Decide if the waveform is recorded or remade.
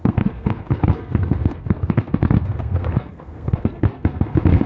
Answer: remade